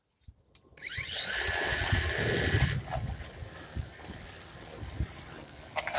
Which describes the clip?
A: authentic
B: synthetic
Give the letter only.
A